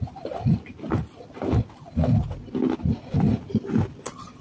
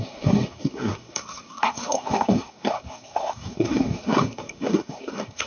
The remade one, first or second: second